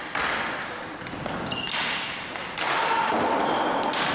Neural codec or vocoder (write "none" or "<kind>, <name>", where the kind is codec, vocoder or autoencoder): none